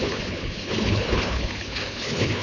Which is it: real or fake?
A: fake